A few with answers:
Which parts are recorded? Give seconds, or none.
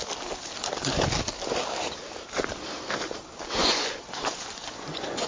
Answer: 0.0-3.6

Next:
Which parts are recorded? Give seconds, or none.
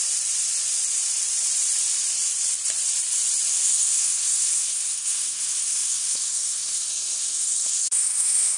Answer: 0.0-3.5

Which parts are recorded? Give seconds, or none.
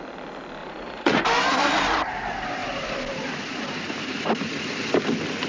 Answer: 0.0-0.6; 1.2-5.5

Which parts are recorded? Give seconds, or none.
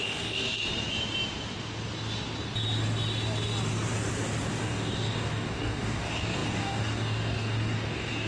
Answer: 0.7-4.6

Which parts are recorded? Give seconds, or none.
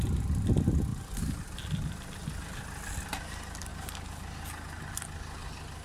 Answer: 0.0-5.8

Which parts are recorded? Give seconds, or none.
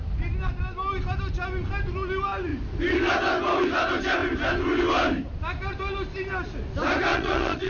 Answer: 0.0-7.1